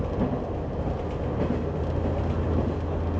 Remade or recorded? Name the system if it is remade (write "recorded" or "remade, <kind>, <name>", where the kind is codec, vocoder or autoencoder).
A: recorded